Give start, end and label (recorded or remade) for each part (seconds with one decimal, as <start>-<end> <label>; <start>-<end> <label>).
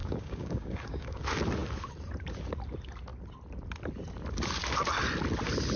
0.0-1.2 remade; 1.2-5.8 recorded